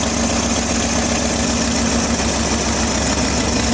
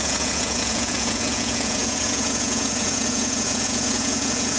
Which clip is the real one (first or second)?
first